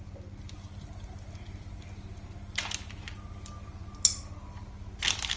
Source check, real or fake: real